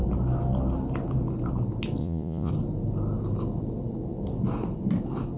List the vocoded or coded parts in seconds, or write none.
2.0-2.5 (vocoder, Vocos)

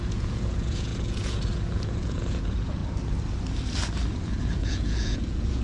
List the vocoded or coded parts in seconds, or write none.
0.0-2.8 (vocoder, Vocos); 4.1-5.6

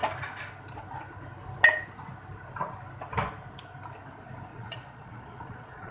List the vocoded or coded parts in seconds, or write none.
4.5-5.9 (vocoder, Vocos)

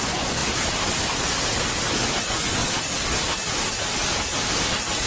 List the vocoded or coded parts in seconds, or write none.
0.0-0.4 (vocoder, Vocos); 2.2-2.6